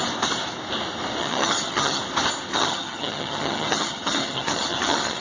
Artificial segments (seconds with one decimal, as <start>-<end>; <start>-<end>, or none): 1.2-2.0; 2.5-5.2